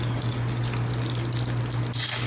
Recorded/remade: recorded